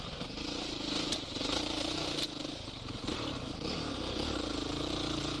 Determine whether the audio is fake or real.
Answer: fake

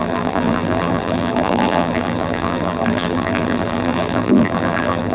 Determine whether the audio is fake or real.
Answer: fake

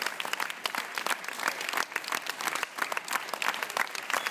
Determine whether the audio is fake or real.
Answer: real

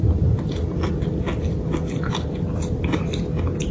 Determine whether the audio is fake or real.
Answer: real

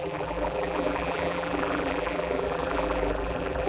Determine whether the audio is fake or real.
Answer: fake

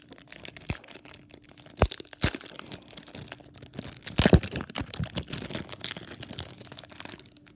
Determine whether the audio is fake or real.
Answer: real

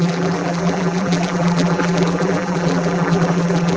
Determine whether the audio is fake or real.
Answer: fake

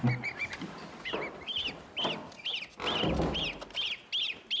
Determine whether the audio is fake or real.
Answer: real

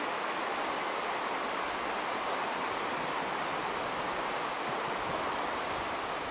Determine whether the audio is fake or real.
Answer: real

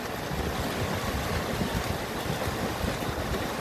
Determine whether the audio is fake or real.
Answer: real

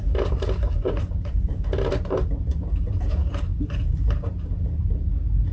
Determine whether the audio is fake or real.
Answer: fake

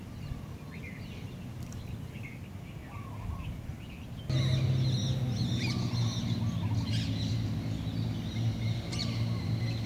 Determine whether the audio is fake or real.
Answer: real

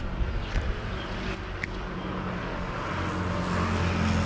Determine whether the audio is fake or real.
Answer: real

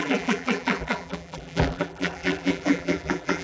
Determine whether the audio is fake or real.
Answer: fake